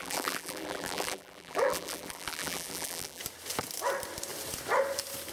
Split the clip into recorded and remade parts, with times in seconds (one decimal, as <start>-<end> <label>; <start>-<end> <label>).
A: 0.0-3.2 remade; 3.2-5.3 recorded